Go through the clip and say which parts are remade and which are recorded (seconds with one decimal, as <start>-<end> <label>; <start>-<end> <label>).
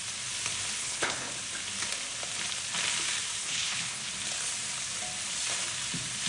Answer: 0.0-0.8 recorded; 0.8-1.3 remade; 1.3-3.4 recorded; 3.4-4.1 remade; 4.1-6.3 recorded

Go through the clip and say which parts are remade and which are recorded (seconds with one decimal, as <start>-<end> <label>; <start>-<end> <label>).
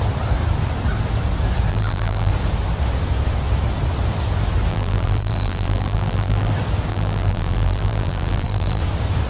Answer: 0.0-1.7 recorded; 1.7-2.3 remade; 2.3-4.7 recorded; 4.7-6.5 remade; 6.5-6.9 recorded; 6.9-8.8 remade; 8.8-9.3 recorded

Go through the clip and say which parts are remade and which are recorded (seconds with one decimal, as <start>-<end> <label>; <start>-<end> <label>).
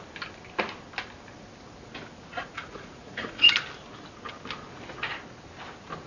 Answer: 0.0-2.3 recorded; 2.3-3.5 remade; 3.5-6.1 recorded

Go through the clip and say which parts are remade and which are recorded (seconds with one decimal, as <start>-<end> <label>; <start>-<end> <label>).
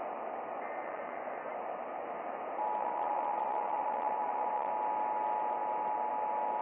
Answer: 0.0-0.8 recorded; 0.8-1.5 remade; 1.5-2.8 recorded; 2.8-4.7 remade; 4.7-6.6 recorded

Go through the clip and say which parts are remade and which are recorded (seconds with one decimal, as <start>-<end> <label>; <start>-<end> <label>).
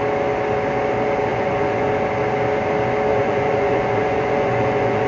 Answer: 0.0-1.3 recorded; 1.3-1.9 remade; 1.9-3.1 recorded; 3.1-5.1 remade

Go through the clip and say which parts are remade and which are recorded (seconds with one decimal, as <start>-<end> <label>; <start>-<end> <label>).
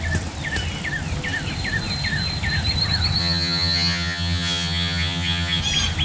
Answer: 0.0-3.2 recorded; 3.2-5.6 remade; 5.6-6.0 recorded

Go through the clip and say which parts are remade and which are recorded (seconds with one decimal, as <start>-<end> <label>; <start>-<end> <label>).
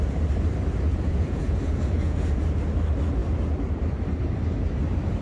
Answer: 0.0-0.9 recorded; 0.9-2.6 remade; 2.6-5.2 recorded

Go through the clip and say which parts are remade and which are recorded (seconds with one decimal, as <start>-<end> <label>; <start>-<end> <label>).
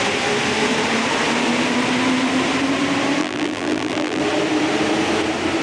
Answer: 0.0-3.2 recorded; 3.2-4.2 remade; 4.2-5.6 recorded